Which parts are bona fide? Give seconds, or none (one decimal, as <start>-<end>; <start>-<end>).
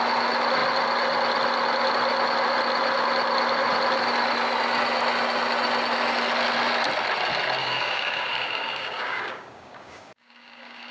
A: 0.0-7.6